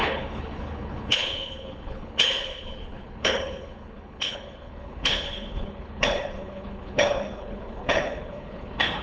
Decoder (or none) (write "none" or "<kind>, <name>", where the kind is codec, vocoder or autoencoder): codec, HILCodec